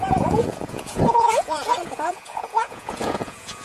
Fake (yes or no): yes